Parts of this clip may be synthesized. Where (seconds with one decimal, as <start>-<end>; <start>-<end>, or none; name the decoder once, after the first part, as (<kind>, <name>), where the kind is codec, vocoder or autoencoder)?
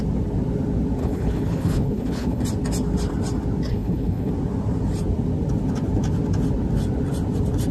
1.0-2.4 (codec, HILCodec); 3.7-4.3